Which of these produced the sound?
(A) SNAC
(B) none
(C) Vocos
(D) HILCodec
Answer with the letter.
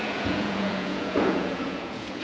C